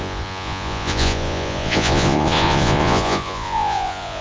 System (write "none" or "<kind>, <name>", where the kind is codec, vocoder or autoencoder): vocoder, Vocos